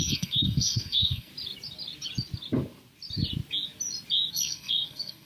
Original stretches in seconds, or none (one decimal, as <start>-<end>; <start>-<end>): 1.3-4.3